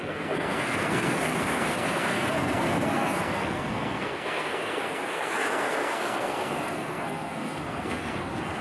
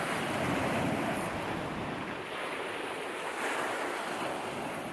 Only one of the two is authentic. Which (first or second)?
second